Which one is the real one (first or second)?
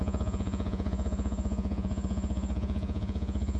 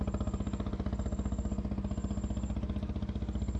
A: second